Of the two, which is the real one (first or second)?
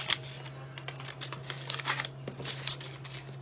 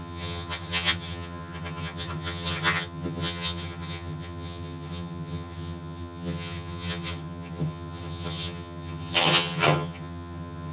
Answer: first